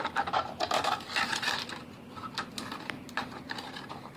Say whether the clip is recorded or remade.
recorded